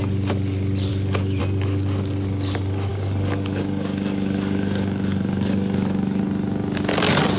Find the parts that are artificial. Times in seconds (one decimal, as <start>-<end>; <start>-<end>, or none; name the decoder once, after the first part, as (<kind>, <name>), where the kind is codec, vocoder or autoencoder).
0.9-1.4 (codec, DAC); 2.9-6.2